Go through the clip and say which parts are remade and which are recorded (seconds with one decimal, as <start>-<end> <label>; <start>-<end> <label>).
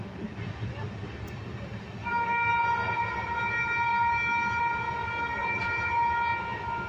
0.0-2.0 recorded; 2.0-2.5 remade; 2.5-5.0 recorded; 5.0-5.6 remade; 5.6-6.9 recorded